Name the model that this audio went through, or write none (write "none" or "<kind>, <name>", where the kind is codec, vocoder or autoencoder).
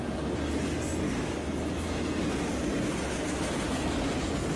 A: none